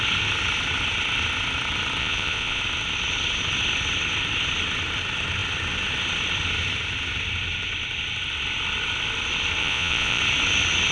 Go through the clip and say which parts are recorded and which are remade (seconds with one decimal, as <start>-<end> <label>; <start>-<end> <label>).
0.0-2.0 recorded; 2.0-2.6 remade; 2.6-9.6 recorded; 9.6-10.2 remade; 10.2-10.9 recorded